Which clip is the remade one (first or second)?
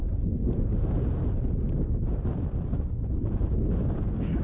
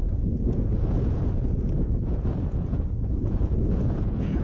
second